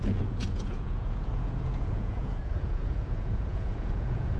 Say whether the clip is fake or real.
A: fake